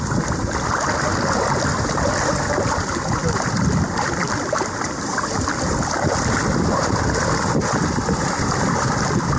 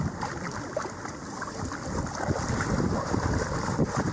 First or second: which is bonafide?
second